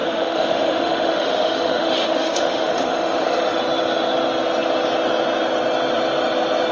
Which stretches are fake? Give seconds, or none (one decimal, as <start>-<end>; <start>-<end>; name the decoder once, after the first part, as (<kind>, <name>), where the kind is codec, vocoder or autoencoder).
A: 0.0-3.6 (autoencoder, DAC-VAE)